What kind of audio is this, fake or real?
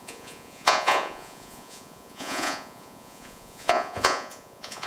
fake